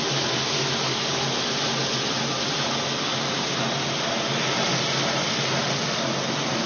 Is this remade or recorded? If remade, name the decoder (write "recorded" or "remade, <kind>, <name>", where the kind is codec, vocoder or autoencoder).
recorded